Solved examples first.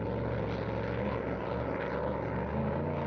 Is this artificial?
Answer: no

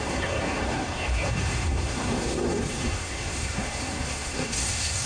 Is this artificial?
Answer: yes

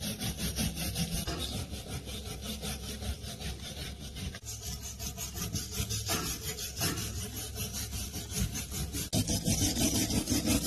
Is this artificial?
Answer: no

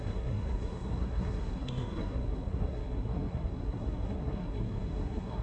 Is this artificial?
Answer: yes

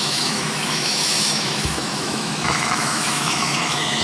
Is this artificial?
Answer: yes